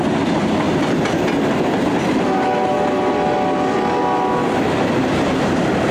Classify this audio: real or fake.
real